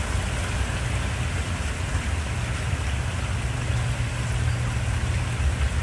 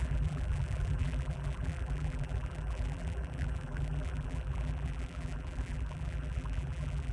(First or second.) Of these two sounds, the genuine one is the first